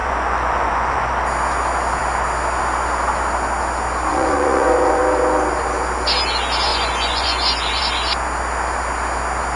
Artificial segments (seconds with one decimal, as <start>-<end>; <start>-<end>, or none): 0.0-1.1; 4.1-5.0; 6.7-7.8